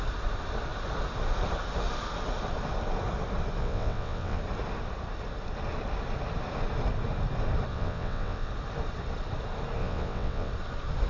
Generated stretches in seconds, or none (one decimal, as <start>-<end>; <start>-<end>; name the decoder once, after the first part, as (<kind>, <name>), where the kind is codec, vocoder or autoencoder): 3.6-4.4 (vocoder, WaveNeXt); 7.7-8.5; 9.8-10.5